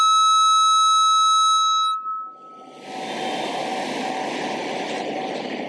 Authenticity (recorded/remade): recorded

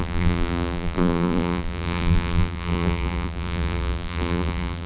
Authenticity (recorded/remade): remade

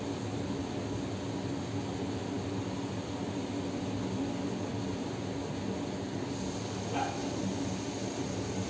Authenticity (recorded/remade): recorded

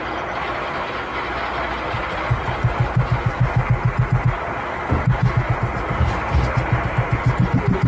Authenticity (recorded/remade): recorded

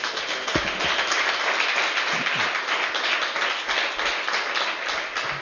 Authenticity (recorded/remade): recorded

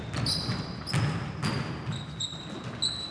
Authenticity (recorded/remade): recorded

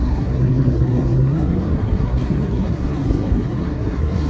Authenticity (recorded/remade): remade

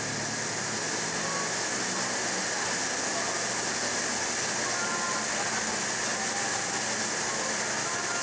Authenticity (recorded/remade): recorded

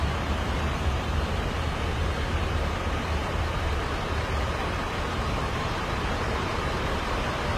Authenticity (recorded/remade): remade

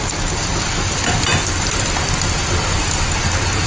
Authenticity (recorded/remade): recorded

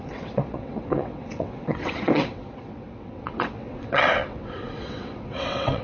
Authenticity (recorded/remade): remade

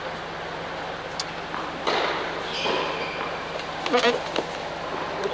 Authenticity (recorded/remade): recorded